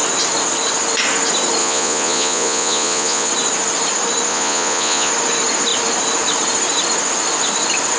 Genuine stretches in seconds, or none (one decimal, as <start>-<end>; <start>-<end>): 0.0-1.6; 3.3-4.3; 5.1-8.0